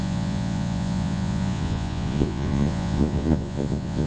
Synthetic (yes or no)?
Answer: yes